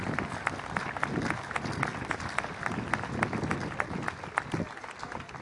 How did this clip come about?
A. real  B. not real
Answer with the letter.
A